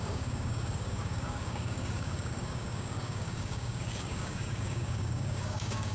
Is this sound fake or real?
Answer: fake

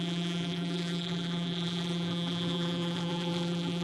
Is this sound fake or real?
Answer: fake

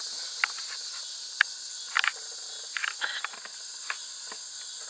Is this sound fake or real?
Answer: real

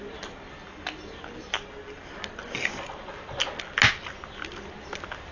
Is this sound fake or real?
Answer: real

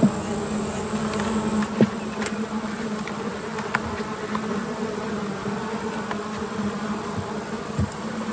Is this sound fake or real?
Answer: real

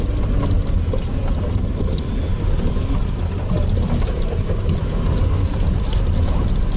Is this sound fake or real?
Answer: real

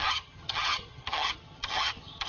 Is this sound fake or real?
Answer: fake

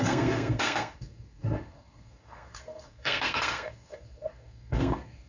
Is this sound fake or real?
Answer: fake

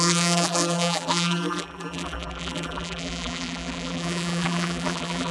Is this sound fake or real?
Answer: fake